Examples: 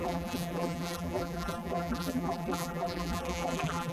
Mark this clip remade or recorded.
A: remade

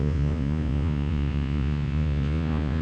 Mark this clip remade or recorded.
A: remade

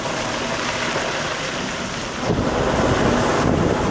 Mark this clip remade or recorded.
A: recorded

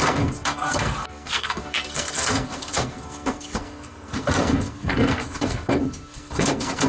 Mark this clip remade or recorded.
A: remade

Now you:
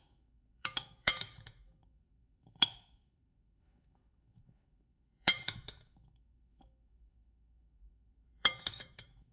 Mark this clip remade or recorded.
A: remade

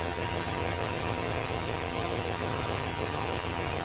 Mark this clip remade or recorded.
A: remade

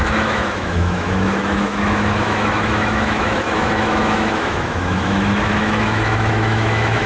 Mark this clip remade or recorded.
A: remade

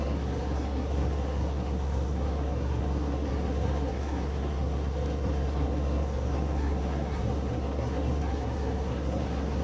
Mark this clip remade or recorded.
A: remade